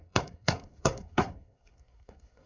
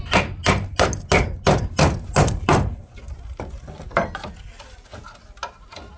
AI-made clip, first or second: first